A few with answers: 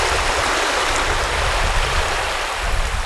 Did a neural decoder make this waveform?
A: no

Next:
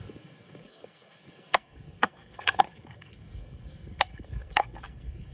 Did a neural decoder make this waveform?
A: yes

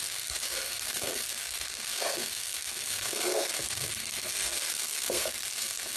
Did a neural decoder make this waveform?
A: yes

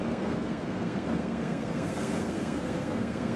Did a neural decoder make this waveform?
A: yes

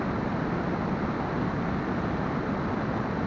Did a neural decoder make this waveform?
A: no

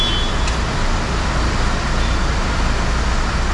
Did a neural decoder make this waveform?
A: no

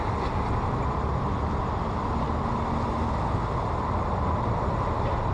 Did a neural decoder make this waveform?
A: no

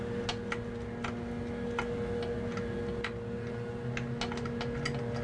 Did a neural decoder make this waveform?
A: no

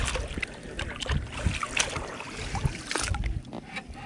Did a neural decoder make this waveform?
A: no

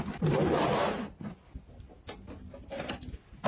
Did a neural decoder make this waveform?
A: no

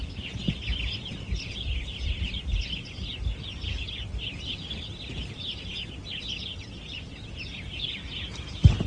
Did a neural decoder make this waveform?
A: no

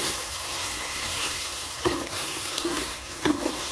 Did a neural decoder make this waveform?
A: yes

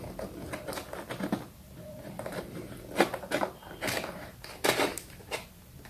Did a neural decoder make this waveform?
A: no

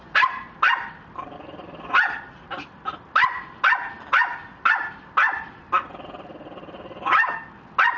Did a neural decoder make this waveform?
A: no